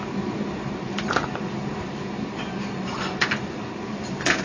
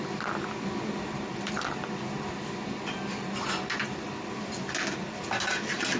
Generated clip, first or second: first